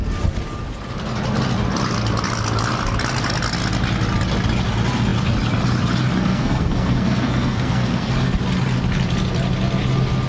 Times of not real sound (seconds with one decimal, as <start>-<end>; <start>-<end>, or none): 6.2-8.1